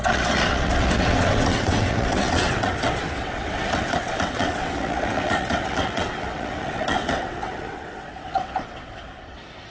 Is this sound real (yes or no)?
no